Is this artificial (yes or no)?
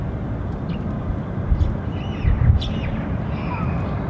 no